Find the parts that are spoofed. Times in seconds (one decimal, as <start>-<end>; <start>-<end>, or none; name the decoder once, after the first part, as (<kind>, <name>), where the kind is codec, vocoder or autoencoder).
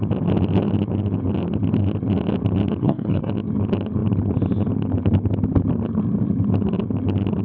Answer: 2.8-3.3 (codec, SNAC)